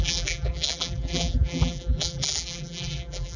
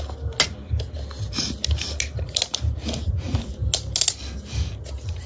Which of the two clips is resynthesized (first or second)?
first